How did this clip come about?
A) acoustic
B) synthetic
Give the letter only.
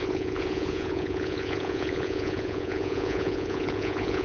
B